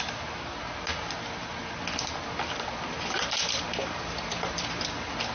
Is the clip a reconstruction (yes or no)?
no